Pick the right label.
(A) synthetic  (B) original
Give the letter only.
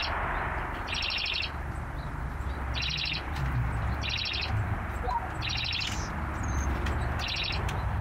B